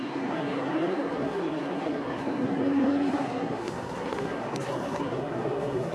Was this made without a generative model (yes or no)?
no